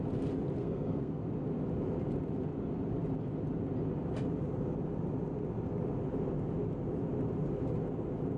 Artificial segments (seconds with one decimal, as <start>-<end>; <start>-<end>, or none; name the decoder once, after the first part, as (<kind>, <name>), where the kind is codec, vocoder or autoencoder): 0.6-1.2 (codec, SNAC)